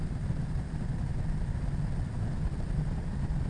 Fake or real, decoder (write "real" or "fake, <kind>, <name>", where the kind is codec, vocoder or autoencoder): real